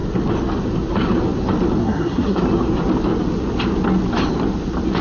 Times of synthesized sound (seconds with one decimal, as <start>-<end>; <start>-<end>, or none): 1.8-2.4